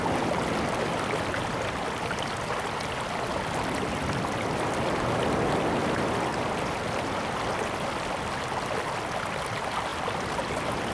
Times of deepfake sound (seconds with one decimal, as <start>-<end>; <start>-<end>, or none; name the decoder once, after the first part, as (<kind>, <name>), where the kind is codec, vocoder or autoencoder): 9.9-10.9 (vocoder, BigVGAN v2)